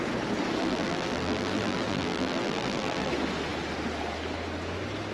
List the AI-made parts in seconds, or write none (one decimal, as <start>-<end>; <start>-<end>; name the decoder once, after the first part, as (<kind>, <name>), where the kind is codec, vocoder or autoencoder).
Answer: 0.6-3.1 (vocoder, BigVGAN v2)